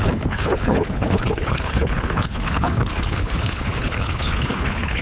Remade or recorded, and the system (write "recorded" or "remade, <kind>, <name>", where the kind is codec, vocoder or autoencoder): remade, codec, HILCodec